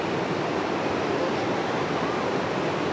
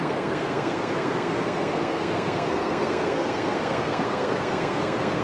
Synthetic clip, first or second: second